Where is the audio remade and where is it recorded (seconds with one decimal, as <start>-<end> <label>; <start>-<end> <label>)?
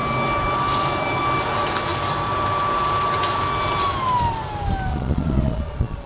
0.0-4.9 recorded; 4.9-6.1 remade